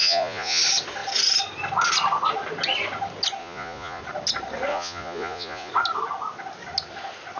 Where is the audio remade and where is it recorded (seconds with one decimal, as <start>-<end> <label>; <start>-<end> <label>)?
0.0-0.6 remade; 0.6-3.4 recorded; 3.4-4.0 remade; 4.0-4.7 recorded; 4.7-5.7 remade; 5.7-7.4 recorded